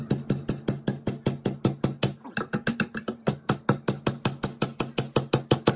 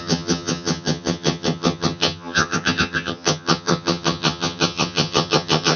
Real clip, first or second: first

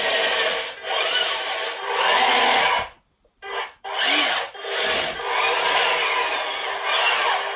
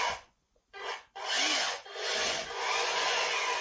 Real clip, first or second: first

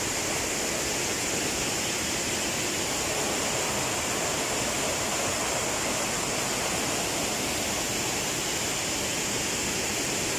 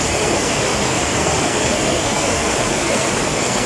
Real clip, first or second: first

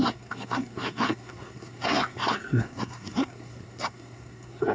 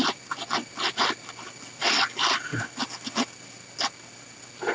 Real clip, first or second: second